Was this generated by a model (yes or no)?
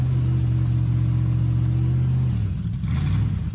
no